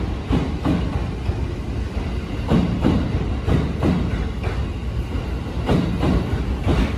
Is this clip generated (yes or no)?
no